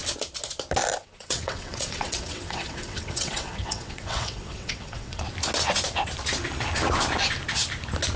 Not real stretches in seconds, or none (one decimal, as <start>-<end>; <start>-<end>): 1.0-5.2